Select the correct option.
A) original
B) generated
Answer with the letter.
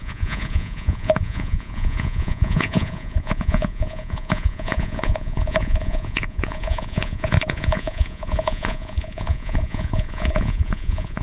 B